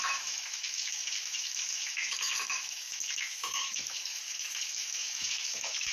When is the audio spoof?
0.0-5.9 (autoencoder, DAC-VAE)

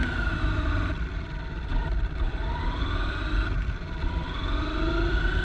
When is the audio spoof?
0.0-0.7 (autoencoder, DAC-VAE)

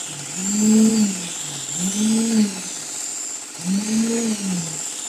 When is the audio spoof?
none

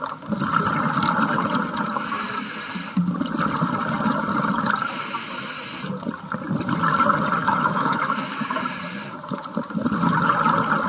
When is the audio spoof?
7.4-8.6 (autoencoder, DAC-VAE)

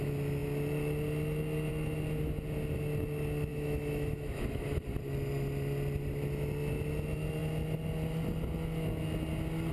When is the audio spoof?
3.5-4.8 (autoencoder, DAC-VAE)

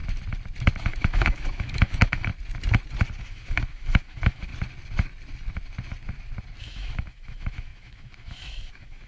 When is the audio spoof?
0.8-2.3 (autoencoder, DAC-VAE); 3.2-4.5; 6.6-9.1